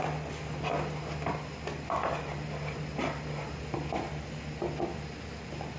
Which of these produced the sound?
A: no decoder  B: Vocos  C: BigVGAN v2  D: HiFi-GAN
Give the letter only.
A